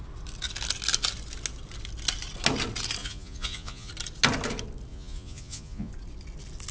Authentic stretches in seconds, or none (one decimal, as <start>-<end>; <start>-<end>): 0.0-3.0; 3.9-4.9; 5.9-6.7